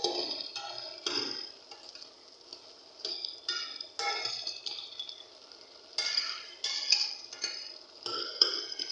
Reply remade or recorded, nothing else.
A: recorded